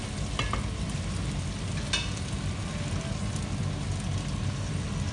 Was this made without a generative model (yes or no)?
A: yes